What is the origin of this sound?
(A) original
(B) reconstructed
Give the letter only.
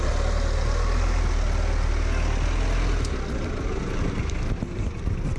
A